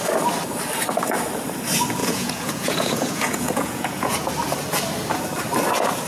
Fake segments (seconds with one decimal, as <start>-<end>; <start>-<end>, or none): 2.0-4.3